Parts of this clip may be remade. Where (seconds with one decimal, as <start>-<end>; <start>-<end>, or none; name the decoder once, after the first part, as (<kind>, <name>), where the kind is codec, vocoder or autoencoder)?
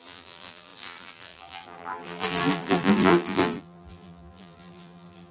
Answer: 0.0-5.3 (vocoder, BigVGAN v2)